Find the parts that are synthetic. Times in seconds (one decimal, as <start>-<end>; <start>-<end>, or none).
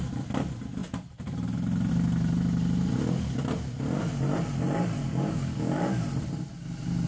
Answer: 5.0-6.0